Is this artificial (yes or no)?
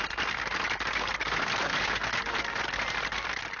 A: no